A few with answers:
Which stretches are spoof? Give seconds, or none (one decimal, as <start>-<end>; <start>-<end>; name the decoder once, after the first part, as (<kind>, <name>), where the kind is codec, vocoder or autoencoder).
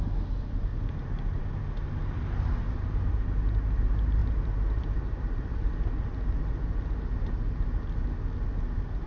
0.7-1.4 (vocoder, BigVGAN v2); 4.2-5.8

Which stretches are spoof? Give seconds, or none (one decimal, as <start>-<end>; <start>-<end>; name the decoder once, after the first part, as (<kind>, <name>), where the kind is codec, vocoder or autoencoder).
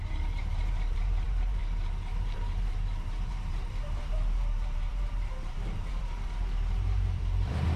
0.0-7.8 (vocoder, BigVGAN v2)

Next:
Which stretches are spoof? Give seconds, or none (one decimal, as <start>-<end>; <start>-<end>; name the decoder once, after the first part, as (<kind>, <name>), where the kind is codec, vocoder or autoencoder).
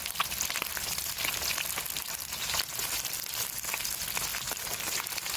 4.3-4.8 (vocoder, BigVGAN v2)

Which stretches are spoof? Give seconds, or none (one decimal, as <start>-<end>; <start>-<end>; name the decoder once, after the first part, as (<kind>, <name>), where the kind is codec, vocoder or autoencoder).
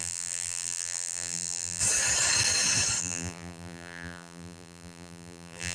0.0-1.8 (vocoder, BigVGAN v2); 3.0-5.7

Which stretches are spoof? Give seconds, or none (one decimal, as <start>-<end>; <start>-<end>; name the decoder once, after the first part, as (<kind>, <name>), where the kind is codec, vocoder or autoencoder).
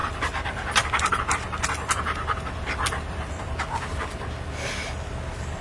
0.0-3.4 (vocoder, BigVGAN v2)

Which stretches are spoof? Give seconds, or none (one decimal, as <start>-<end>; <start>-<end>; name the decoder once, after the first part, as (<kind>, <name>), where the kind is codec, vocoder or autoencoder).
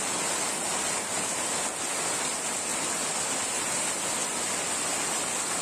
none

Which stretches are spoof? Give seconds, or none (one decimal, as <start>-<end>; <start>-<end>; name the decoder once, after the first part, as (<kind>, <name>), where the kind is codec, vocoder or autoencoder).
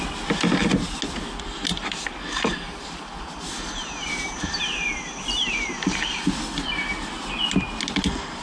1.7-6.2 (vocoder, BigVGAN v2)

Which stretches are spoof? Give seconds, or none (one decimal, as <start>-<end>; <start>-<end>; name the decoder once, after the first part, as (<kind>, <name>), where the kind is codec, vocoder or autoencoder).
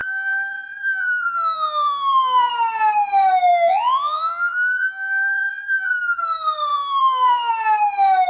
0.0-2.5 (vocoder, BigVGAN v2); 3.5-5.9; 6.7-7.5